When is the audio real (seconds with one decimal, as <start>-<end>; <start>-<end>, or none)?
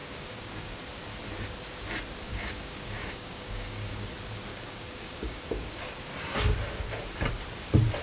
0.8-2.3; 4.1-4.5; 6.0-8.0